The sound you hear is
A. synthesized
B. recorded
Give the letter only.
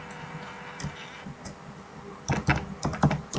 B